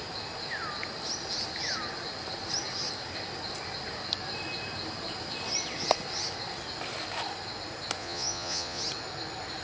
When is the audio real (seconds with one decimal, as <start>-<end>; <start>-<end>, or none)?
0.0-8.0; 8.8-9.6